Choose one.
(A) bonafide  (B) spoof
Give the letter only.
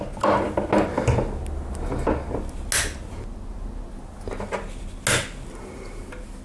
A